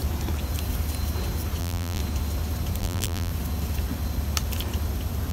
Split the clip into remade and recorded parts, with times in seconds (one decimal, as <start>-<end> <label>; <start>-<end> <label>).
0.0-1.6 recorded; 1.6-2.0 remade; 2.0-2.8 recorded; 2.8-3.3 remade; 3.3-5.3 recorded